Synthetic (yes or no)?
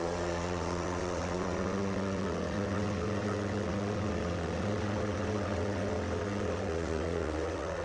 yes